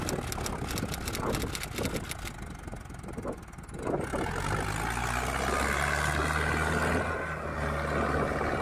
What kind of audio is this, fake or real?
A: real